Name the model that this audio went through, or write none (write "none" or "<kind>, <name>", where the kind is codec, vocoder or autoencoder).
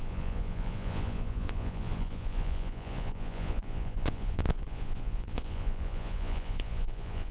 vocoder, Vocos